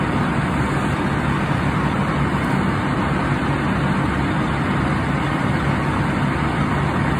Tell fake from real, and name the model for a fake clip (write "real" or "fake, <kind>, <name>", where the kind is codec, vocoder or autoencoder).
real